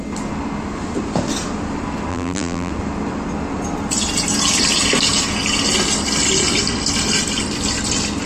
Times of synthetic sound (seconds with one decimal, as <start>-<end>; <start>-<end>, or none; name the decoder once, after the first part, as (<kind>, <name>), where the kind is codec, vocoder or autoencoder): 2.1-2.7 (vocoder, BigVGAN v2)